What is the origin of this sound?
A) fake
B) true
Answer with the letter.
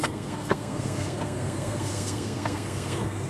A